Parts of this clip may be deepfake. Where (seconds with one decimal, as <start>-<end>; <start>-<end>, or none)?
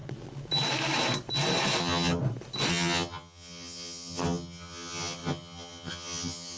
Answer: 1.8-2.2; 2.7-6.6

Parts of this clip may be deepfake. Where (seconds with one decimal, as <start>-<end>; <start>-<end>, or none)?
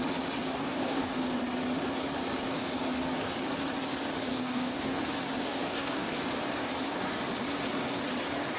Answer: 0.5-1.2; 4.3-5.0; 5.4-6.1